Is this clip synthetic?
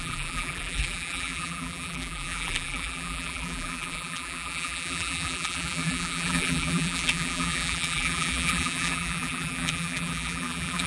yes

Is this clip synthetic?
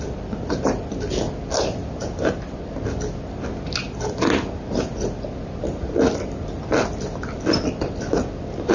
no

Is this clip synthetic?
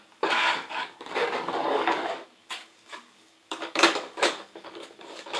yes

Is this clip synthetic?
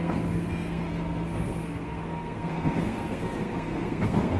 yes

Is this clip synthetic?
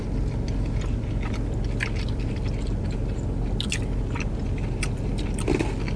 no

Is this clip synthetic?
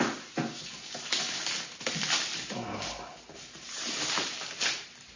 no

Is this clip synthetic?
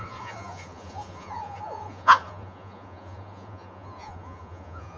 yes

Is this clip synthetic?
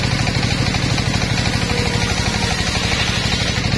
no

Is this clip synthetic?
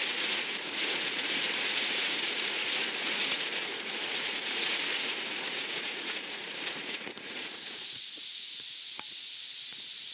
yes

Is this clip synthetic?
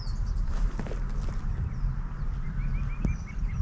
no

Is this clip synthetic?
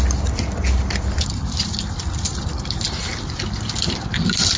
yes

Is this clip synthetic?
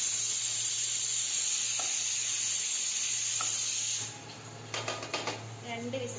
no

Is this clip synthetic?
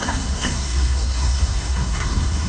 yes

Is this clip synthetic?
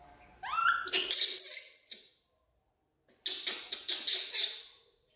no